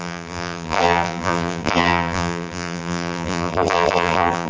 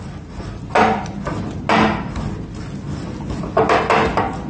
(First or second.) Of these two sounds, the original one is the second